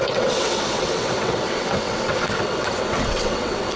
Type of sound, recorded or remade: remade